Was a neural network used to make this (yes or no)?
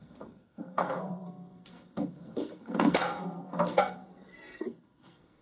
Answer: yes